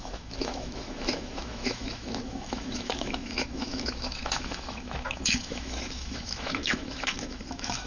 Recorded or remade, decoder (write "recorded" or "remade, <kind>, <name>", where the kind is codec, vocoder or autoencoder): remade, autoencoder, DAC-VAE